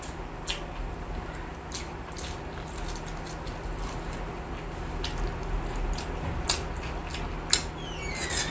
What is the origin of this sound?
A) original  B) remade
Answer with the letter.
A